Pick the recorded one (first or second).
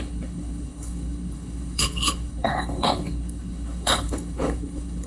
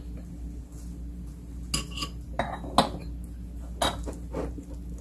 second